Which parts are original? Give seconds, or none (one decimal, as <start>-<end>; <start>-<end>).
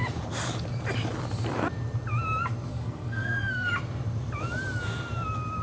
0.0-2.7; 3.7-5.6